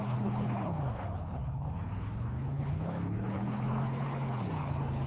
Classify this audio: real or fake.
fake